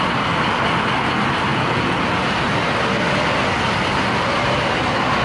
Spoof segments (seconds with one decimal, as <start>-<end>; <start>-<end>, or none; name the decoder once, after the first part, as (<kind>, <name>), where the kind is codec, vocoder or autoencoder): 1.5-2.0 (vocoder, Vocos)